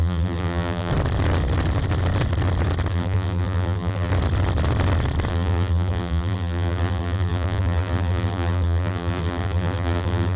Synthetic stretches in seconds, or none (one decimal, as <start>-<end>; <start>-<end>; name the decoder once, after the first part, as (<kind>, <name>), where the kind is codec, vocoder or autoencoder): 0.0-0.9 (vocoder, BigVGAN v2); 2.9-4.1; 5.3-10.4